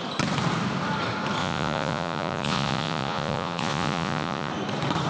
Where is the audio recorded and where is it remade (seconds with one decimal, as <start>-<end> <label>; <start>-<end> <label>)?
0.0-1.4 recorded; 1.4-4.5 remade; 4.5-5.1 recorded